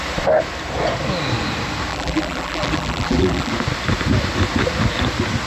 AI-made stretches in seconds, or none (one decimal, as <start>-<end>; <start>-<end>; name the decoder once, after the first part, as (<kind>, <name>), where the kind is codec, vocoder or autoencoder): 1.9-3.5 (vocoder, BigVGAN v2)